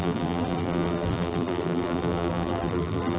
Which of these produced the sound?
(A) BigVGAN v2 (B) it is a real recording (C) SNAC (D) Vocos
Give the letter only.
A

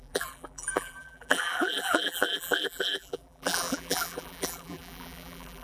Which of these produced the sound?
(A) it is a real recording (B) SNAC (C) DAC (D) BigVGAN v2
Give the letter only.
D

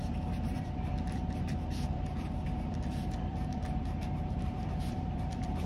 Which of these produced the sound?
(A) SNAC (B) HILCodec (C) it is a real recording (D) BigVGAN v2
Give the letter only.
D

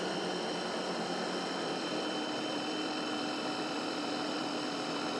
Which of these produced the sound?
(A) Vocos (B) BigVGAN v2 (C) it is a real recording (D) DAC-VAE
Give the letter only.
B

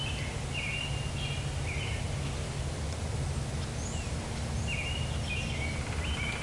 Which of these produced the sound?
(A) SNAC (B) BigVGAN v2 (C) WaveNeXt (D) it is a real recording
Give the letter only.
D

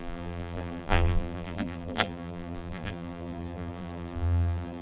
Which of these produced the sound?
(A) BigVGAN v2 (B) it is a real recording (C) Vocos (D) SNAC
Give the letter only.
A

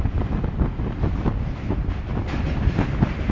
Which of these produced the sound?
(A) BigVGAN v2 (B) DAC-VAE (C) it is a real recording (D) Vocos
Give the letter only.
C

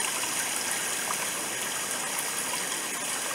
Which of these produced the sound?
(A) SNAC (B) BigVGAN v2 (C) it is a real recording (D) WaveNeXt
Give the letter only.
C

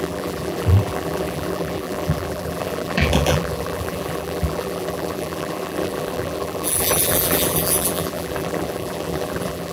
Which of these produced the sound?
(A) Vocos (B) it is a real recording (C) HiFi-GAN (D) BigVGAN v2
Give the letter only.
D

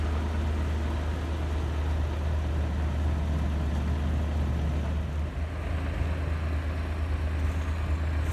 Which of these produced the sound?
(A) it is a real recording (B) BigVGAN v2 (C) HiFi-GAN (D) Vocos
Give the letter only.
A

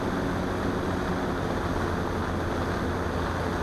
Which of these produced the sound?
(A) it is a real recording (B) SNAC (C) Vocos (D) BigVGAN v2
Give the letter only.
A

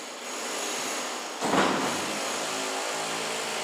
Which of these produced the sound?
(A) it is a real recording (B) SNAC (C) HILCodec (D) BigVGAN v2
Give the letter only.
A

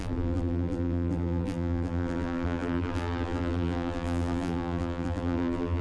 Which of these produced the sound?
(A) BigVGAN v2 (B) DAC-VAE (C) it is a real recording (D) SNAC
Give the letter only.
A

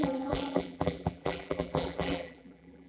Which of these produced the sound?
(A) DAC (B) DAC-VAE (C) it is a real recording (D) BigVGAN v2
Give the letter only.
D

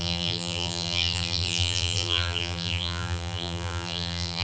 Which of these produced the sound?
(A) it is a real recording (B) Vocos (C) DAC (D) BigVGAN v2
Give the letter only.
D